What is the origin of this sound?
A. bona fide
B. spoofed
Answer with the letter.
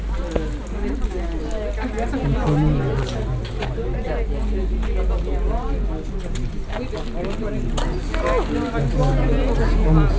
A